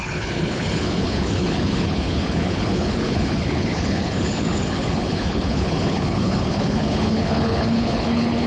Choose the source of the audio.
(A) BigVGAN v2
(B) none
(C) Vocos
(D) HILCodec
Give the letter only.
D